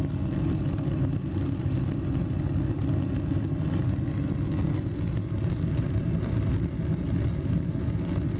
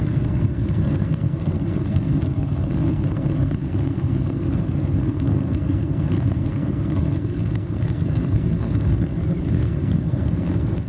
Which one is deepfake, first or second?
second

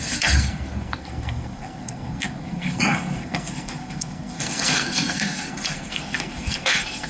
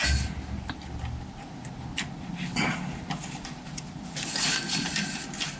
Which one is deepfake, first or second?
first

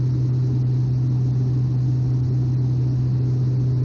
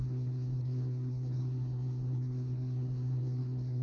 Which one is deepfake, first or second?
second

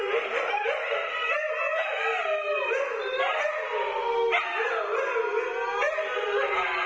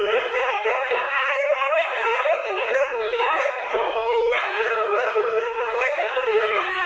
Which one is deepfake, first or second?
second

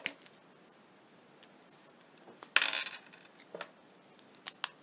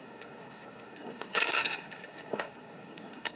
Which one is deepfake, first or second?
second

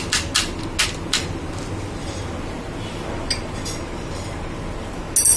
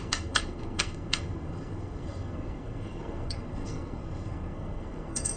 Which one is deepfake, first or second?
second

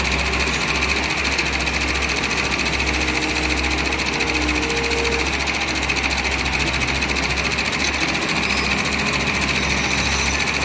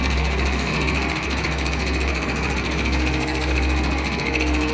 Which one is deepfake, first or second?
second